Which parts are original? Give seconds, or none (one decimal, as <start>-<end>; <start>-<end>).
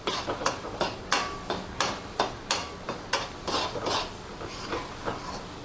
0.0-5.6